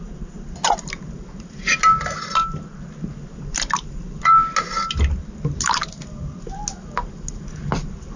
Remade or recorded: recorded